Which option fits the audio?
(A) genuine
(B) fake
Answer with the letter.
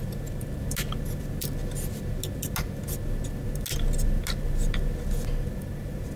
A